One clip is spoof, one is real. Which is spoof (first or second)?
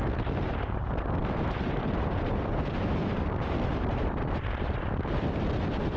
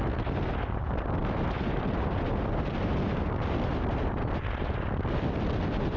first